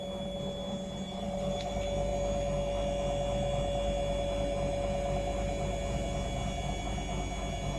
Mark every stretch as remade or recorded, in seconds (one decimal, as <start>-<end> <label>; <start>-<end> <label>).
0.0-7.8 recorded